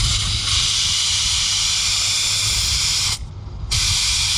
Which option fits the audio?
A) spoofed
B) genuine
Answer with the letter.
B